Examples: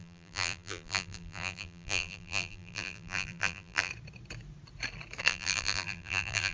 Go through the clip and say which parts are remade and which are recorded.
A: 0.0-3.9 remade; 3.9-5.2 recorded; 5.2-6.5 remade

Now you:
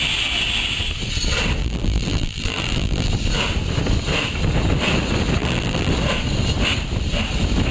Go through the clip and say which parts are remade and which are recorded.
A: 0.0-1.6 recorded; 1.6-3.1 remade; 3.1-5.4 recorded; 5.4-5.9 remade; 5.9-7.7 recorded

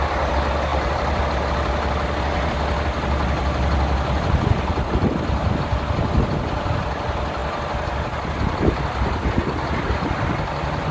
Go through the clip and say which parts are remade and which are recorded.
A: 0.0-0.7 recorded; 0.7-1.2 remade; 1.2-10.9 recorded

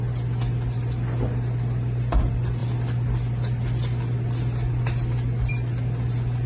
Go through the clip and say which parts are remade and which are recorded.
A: 0.0-6.5 recorded